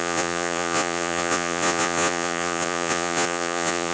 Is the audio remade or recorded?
remade